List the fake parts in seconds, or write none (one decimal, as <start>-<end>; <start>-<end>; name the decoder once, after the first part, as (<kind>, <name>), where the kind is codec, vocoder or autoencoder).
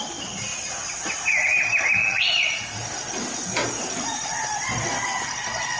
2.0-2.6 (vocoder, Vocos)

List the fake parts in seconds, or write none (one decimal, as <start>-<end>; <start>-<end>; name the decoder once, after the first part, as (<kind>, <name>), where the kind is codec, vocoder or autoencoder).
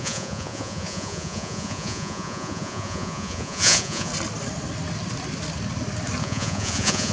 0.0-4.1 (vocoder, Vocos); 6.2-7.1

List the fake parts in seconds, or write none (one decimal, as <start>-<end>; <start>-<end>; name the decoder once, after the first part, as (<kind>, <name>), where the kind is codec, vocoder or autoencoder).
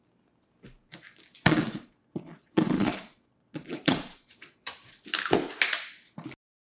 1.3-5.0 (vocoder, Vocos)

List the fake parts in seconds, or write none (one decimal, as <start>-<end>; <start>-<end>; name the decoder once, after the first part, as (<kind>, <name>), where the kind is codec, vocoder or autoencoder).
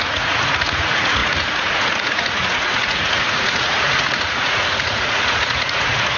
0.0-6.2 (vocoder, Vocos)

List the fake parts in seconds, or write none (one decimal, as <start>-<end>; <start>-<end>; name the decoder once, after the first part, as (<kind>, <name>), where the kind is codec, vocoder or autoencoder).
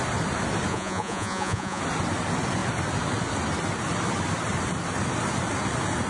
0.7-1.8 (vocoder, Vocos)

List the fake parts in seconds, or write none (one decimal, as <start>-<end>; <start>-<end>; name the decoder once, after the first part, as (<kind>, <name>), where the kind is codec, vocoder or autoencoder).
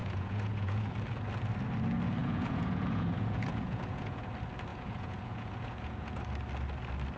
0.0-0.9 (vocoder, Vocos); 2.2-4.3; 4.7-6.2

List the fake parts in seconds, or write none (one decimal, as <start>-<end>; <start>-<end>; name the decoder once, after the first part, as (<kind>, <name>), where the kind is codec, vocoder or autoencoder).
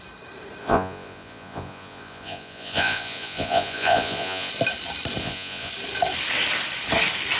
0.6-4.5 (vocoder, Vocos); 5.2-5.7